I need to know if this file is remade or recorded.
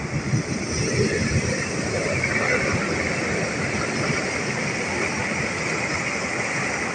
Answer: recorded